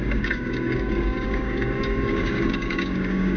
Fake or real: fake